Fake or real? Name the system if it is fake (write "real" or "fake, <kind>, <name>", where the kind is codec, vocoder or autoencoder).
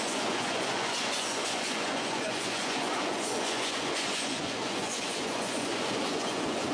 fake, vocoder, Vocos